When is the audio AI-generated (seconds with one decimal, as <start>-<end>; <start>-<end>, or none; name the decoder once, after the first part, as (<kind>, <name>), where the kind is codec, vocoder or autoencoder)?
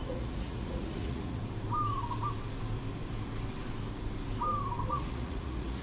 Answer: 0.0-1.4 (vocoder, Vocos); 4.9-5.8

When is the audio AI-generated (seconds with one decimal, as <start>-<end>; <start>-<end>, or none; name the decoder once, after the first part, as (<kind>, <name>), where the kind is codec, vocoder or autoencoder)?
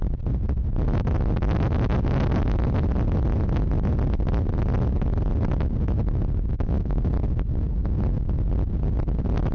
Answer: 6.5-7.1 (codec, DAC)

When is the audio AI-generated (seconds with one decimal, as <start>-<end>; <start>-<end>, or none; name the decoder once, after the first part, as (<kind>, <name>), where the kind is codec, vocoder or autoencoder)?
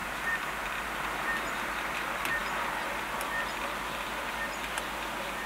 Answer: none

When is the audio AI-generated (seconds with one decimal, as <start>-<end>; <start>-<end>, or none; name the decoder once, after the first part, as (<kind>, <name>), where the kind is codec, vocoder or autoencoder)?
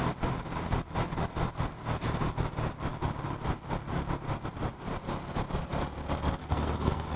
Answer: 6.4-7.2 (codec, SNAC)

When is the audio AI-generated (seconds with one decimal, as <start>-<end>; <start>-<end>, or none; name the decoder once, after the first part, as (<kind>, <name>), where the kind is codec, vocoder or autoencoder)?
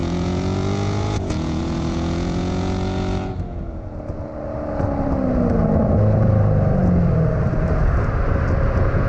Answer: 0.0-4.3 (vocoder, Vocos); 8.7-9.1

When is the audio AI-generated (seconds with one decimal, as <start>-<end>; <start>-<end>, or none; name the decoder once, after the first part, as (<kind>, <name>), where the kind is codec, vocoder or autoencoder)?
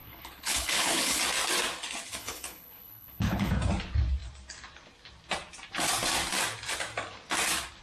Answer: 0.0-1.2 (codec, HILCodec); 2.2-3.5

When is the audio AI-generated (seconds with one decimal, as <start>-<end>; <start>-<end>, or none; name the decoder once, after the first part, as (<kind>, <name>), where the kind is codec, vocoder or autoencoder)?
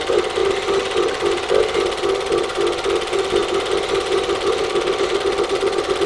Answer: none